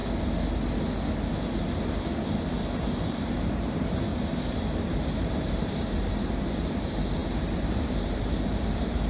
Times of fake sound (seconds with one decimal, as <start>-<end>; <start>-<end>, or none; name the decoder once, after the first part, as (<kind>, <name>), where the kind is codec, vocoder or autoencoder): 2.8-4.1 (vocoder, BigVGAN v2); 4.8-9.1